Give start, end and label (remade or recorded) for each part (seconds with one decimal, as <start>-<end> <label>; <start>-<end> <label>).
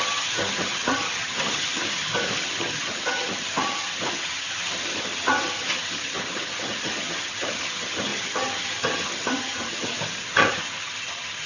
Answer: 0.0-11.5 remade